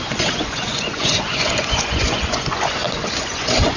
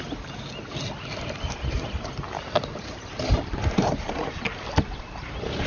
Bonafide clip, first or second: second